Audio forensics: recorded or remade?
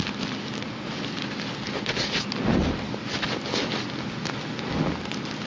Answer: recorded